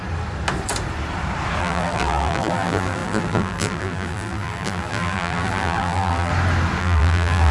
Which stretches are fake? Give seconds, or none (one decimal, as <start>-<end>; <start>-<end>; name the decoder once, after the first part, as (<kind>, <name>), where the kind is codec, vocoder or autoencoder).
1.6-6.3 (vocoder, BigVGAN v2); 6.8-7.5